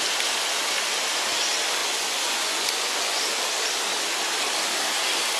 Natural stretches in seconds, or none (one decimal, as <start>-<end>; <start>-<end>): 0.0-1.8; 3.2-5.4